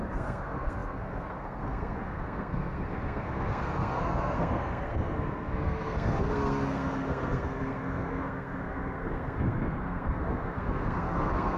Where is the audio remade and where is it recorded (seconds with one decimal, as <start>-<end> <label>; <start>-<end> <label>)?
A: 0.0-11.6 remade